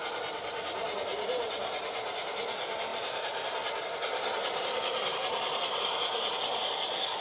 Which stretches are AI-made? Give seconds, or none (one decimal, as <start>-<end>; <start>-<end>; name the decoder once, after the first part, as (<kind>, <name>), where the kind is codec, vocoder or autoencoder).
none